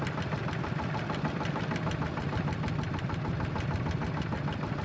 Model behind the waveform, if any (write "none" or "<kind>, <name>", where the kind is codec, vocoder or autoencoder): none